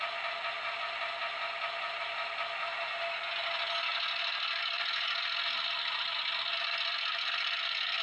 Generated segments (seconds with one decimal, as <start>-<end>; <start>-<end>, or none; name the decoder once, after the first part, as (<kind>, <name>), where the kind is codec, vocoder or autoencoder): none